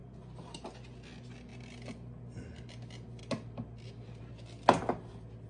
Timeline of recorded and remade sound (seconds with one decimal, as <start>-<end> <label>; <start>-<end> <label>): 0.0-5.5 recorded